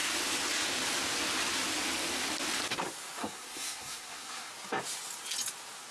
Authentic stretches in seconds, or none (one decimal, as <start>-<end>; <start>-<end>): 0.0-3.2; 4.5-5.9